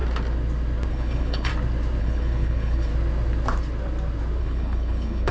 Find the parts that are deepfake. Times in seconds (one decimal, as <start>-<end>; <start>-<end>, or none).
0.9-1.5; 2.0-2.9; 4.4-5.3